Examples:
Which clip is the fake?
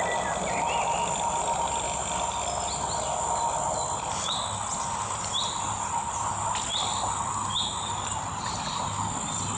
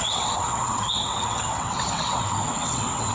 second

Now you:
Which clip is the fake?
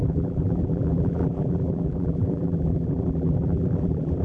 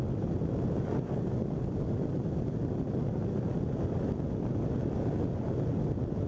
first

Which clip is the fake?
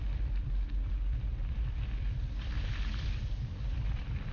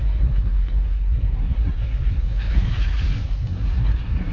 second